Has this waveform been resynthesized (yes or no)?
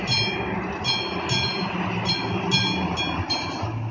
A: no